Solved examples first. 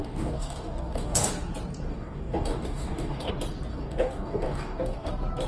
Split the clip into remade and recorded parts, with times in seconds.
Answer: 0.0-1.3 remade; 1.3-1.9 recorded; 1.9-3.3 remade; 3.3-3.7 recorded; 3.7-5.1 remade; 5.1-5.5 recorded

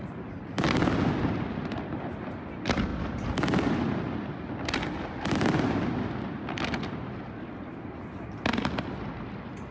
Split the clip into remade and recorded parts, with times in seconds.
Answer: 0.0-9.7 recorded

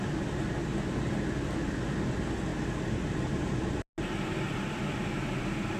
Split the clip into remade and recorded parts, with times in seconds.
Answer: 0.0-2.5 recorded; 2.5-3.8 remade; 3.8-5.8 recorded

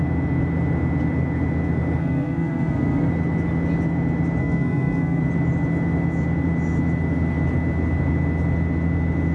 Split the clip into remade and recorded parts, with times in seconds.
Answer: 0.0-2.0 recorded; 2.0-3.1 remade; 3.1-4.4 recorded; 4.4-5.2 remade; 5.2-9.3 recorded